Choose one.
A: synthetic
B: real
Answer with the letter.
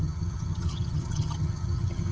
A